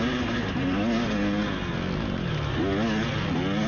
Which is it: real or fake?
real